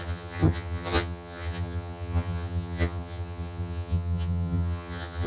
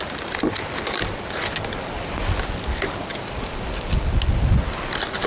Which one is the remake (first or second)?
first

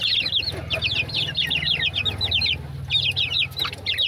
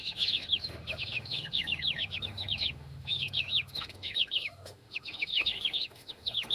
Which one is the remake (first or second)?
second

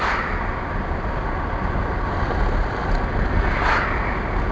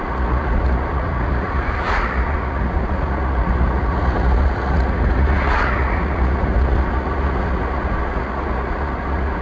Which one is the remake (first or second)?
second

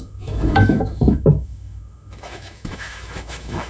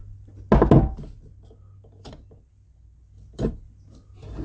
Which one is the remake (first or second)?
first